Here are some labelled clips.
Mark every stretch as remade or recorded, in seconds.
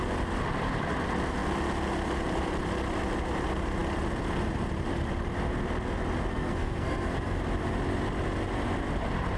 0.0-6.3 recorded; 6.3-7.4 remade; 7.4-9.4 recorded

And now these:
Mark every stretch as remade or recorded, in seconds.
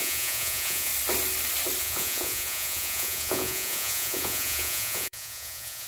0.0-0.9 remade; 0.9-1.8 recorded; 1.8-5.9 remade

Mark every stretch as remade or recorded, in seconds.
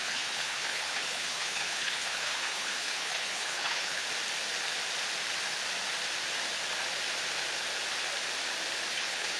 0.0-4.0 remade; 4.0-8.9 recorded; 8.9-9.4 remade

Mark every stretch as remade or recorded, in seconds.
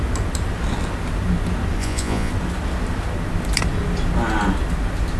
0.0-1.8 recorded; 1.8-2.3 remade; 2.3-5.2 recorded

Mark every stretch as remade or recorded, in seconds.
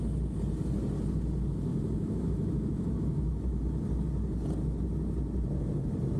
0.0-1.7 recorded; 1.7-3.6 remade; 3.6-6.2 recorded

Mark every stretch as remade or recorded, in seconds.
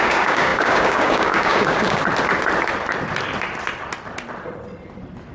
0.0-2.0 remade; 2.0-5.3 recorded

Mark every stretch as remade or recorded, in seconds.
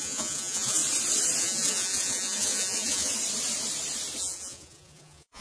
0.0-0.8 remade; 0.8-1.4 recorded; 1.4-3.1 remade; 3.1-4.2 recorded; 4.2-5.4 remade